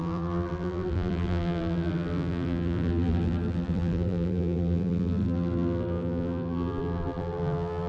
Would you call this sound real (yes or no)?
no